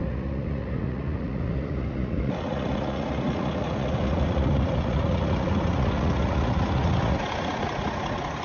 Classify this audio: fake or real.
fake